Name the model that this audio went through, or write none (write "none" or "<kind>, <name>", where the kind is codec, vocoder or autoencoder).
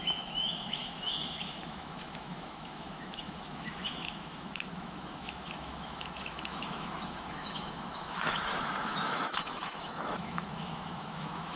autoencoder, DAC-VAE